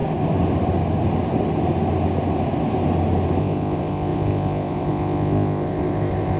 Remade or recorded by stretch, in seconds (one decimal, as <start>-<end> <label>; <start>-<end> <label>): 0.0-3.4 recorded; 3.4-6.4 remade